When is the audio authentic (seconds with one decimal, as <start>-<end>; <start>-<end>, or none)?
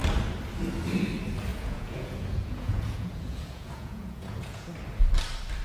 0.0-1.5; 4.7-5.6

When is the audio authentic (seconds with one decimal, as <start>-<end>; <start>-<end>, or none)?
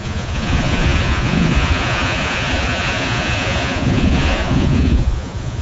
none